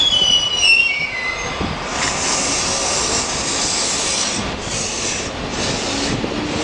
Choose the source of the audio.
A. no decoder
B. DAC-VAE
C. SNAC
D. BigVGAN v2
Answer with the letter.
A